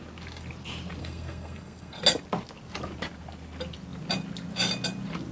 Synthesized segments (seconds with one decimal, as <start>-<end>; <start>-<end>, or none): 1.0-2.0